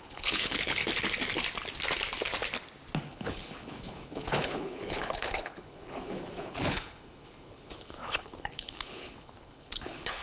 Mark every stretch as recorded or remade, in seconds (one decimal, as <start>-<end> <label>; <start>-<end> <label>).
0.0-0.8 remade; 0.8-3.1 recorded; 3.1-10.2 remade